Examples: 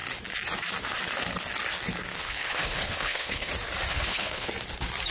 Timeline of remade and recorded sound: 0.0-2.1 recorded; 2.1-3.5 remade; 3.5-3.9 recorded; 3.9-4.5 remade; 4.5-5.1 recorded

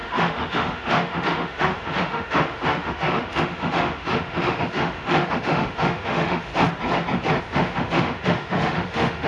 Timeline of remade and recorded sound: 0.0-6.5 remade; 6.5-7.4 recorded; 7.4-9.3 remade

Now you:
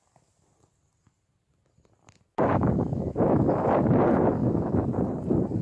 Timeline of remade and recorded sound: 0.0-2.3 recorded; 2.3-3.4 remade; 3.4-4.4 recorded; 4.4-5.0 remade; 5.0-5.6 recorded